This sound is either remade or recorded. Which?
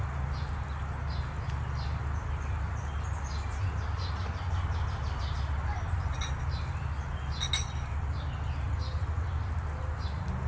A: recorded